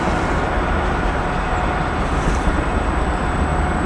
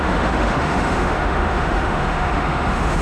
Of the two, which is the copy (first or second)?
second